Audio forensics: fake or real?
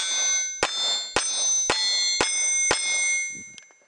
real